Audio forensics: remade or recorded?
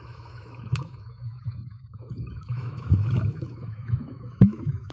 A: remade